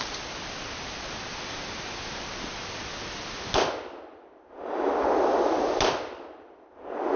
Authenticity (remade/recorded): recorded